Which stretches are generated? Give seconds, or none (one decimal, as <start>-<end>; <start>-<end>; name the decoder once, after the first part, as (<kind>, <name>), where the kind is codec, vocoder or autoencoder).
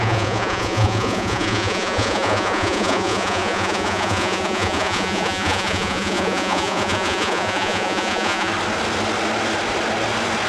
0.0-8.5 (vocoder, Vocos)